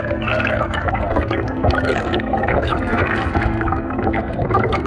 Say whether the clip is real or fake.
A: fake